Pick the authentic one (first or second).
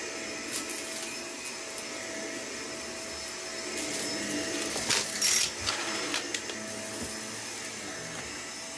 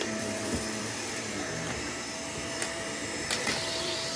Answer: first